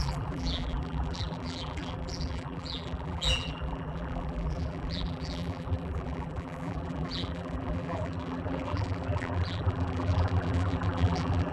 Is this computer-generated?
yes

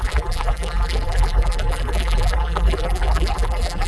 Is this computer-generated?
yes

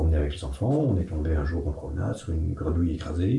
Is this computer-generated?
no